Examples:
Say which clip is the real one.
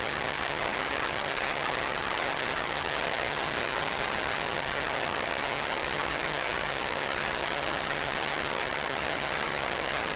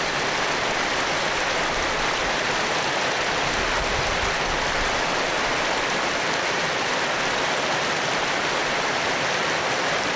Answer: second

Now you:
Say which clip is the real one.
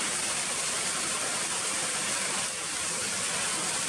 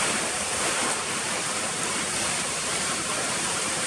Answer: first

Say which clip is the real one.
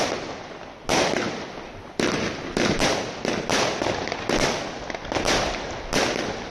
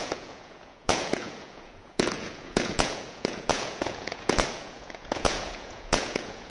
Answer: first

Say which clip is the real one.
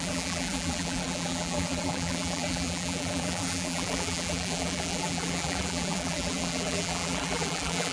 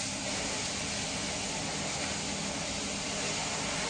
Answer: second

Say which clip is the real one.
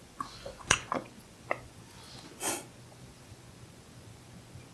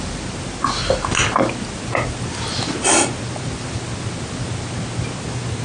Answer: second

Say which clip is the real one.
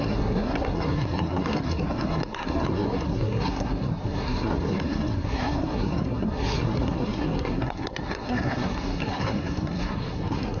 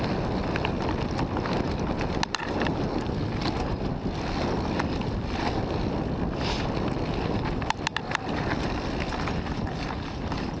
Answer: second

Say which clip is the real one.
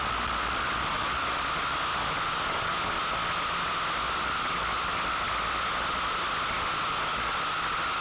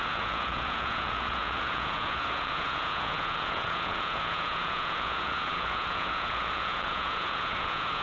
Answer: first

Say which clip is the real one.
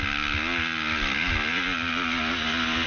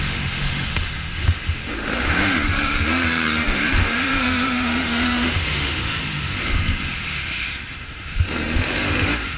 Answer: first